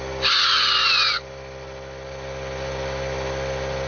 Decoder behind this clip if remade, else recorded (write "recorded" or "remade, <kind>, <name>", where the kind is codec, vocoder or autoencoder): recorded